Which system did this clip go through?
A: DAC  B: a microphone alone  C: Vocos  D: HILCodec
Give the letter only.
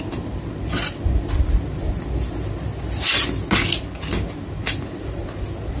B